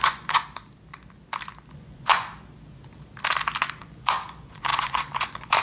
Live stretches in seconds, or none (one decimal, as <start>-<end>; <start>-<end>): 0.4-1.7; 2.3-3.8